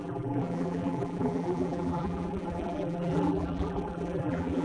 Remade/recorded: remade